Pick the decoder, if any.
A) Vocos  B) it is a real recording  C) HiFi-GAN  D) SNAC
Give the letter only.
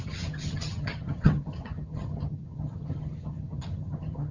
C